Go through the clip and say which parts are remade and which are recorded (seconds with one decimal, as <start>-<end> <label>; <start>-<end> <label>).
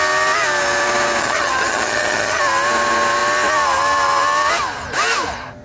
0.0-1.2 recorded; 1.2-2.4 remade; 2.4-5.6 recorded